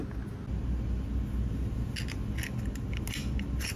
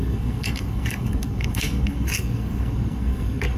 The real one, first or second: first